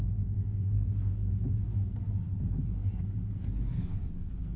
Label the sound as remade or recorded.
remade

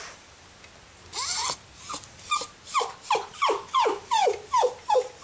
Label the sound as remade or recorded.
recorded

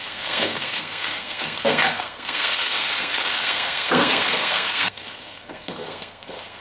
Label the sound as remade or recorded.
remade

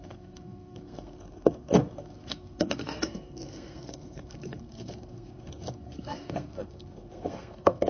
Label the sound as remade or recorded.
remade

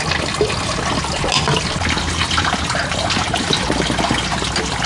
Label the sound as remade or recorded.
recorded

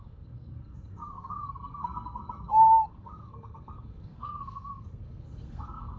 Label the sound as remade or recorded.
remade